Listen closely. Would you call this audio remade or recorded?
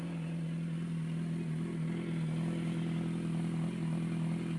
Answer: recorded